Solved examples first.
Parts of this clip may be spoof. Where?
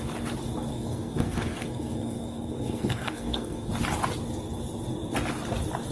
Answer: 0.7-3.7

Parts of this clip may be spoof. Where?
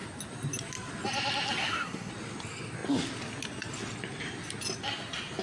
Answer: 1.6-2.1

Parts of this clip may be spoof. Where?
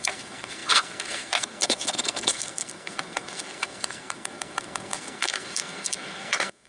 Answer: 0.0-6.7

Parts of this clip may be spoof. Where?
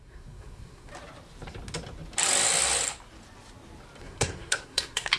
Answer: 0.0-0.9; 4.0-5.2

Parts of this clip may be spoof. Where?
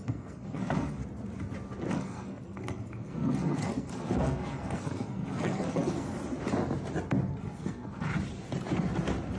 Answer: 0.0-1.0; 1.9-6.2; 7.4-8.1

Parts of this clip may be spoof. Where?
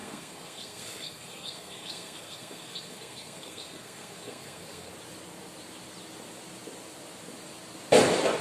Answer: 0.0-4.9